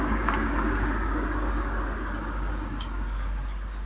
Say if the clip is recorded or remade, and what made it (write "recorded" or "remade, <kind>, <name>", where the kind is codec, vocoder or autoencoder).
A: remade, codec, DAC